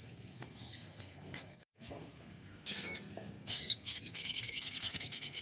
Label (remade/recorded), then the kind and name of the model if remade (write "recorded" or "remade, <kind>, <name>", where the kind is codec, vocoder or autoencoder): remade, codec, SNAC